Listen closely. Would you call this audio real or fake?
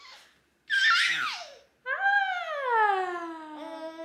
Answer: real